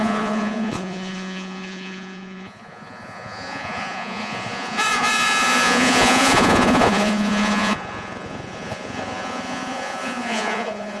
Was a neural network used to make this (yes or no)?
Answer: yes